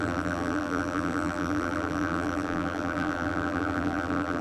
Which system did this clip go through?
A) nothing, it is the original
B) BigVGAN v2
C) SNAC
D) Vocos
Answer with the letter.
B